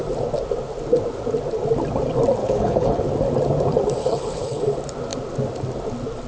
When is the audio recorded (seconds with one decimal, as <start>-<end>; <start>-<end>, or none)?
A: 0.0-2.4; 3.0-4.0; 4.6-6.3